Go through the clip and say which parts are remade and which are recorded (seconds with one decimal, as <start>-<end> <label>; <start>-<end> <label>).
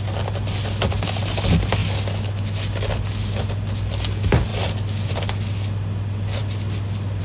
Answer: 0.0-7.2 recorded